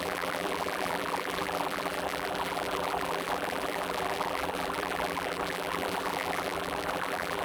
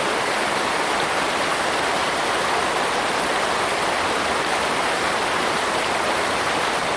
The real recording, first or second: second